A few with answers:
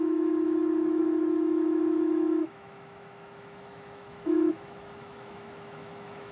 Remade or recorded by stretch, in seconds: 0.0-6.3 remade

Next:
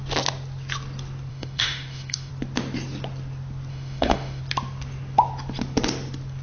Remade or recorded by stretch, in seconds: 0.0-1.3 recorded; 1.3-2.3 remade; 2.3-3.7 recorded; 3.7-4.4 remade; 4.4-6.4 recorded